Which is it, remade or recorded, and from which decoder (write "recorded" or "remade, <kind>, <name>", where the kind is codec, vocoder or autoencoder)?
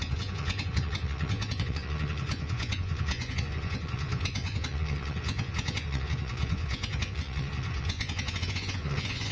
remade, vocoder, Vocos